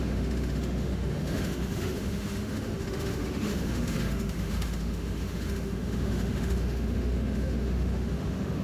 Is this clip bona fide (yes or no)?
no